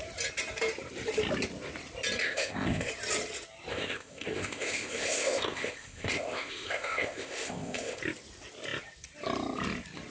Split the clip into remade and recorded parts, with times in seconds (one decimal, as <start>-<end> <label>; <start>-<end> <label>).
0.0-2.2 recorded; 2.2-2.9 remade; 2.9-3.7 recorded; 3.7-8.0 remade; 8.0-10.1 recorded